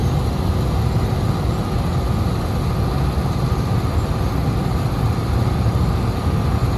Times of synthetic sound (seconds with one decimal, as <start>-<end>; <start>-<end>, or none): none